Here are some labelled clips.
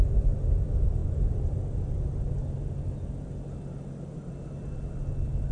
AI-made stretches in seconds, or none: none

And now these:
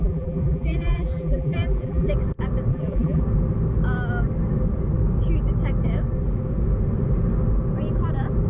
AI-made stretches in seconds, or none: 0.0-2.1 (vocoder, BigVGAN v2); 2.7-3.2

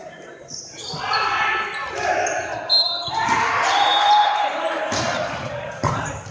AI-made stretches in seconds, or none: 0.0-1.7 (vocoder, BigVGAN v2); 3.1-6.3

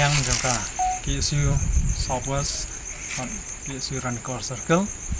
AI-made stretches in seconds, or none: 1.4-3.1 (vocoder, BigVGAN v2)